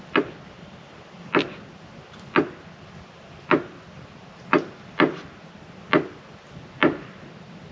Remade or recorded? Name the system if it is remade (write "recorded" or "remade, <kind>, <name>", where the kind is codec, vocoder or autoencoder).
recorded